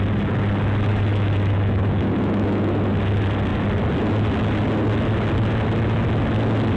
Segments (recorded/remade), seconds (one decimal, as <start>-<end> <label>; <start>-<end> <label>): 0.0-0.9 recorded; 0.9-2.7 remade; 2.7-6.8 recorded